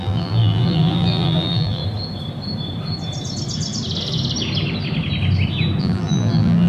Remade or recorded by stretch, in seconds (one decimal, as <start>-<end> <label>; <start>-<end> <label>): 0.0-1.8 remade; 1.8-5.8 recorded; 5.8-6.7 remade